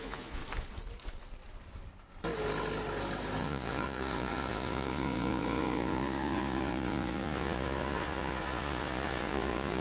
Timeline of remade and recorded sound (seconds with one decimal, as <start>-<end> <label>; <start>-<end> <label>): 0.0-0.4 remade; 0.4-3.4 recorded; 3.4-9.8 remade